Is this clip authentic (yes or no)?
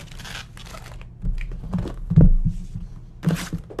yes